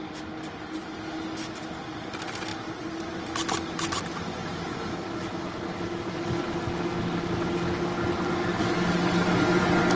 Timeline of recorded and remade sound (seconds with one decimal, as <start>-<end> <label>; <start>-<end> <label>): 0.0-10.0 recorded